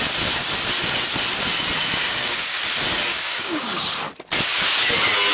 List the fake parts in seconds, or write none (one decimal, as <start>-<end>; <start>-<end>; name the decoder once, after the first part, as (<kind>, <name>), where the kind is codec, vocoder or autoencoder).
2.0-2.6 (codec, DAC); 3.1-3.8

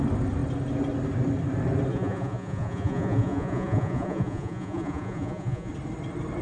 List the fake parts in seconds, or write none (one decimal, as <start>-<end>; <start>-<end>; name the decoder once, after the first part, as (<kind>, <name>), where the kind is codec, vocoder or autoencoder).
1.9-5.7 (vocoder, Vocos)

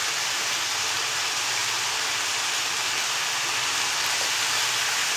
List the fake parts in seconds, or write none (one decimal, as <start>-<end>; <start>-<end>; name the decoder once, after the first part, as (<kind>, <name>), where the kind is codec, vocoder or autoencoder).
0.0-5.2 (vocoder, BigVGAN v2)

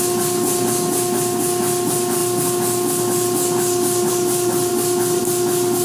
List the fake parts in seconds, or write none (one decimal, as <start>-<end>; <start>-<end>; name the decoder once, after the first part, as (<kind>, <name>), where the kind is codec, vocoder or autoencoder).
none

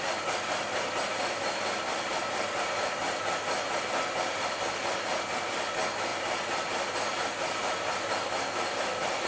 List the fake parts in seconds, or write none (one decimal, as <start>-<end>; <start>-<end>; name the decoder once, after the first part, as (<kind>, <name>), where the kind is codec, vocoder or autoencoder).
none

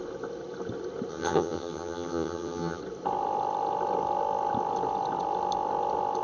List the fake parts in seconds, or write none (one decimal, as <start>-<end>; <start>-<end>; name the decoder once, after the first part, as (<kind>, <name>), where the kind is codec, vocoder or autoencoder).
1.1-2.8 (vocoder, HiFi-GAN)

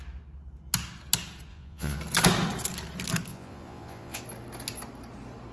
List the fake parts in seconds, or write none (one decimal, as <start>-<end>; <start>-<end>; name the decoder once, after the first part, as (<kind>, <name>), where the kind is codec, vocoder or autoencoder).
1.5-2.0 (vocoder, Vocos); 3.3-4.2

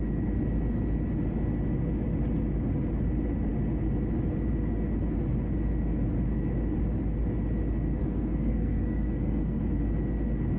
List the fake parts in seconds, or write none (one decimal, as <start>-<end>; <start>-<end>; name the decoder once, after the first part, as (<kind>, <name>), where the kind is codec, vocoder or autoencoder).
8.0-9.6 (codec, SNAC)